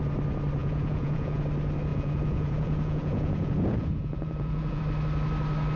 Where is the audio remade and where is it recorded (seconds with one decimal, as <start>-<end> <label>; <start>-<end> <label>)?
0.0-0.6 recorded; 0.6-1.4 remade; 1.4-1.9 recorded; 1.9-4.8 remade; 4.8-5.8 recorded